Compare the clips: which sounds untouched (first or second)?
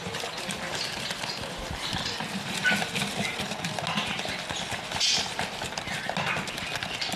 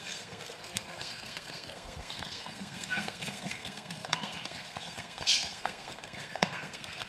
first